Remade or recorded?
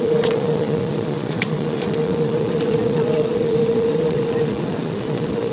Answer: remade